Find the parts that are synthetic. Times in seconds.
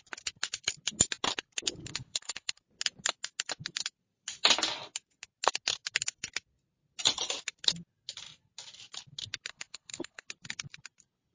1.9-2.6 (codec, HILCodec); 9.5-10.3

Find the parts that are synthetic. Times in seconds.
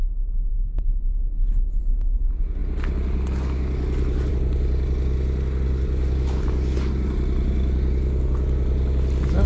0.5-1.8 (codec, HILCodec)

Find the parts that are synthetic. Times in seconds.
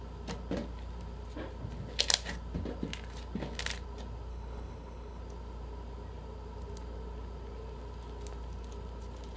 4.3-5.2 (codec, HILCodec)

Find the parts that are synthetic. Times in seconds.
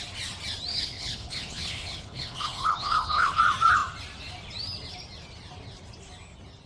0.7-3.4 (codec, HILCodec)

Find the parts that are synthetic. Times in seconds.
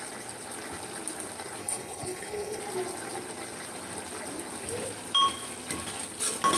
1.6-2.6 (codec, HILCodec)